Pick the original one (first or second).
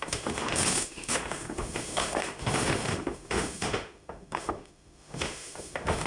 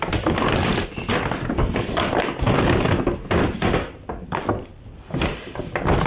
second